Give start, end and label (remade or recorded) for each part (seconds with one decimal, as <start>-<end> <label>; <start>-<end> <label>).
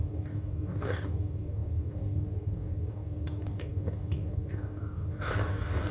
0.0-5.9 remade